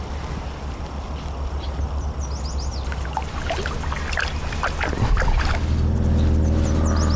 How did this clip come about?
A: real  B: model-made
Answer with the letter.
A